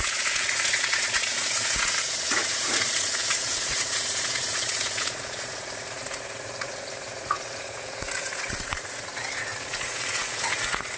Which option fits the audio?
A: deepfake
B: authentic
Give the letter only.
A